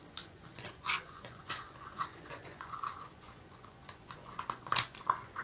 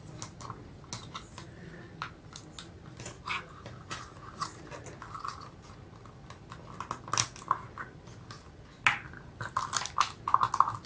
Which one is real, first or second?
second